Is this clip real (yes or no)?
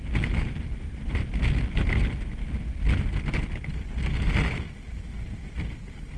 yes